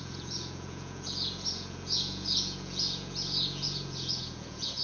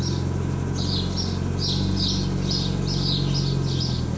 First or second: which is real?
second